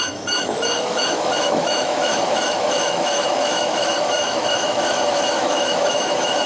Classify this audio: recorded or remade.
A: remade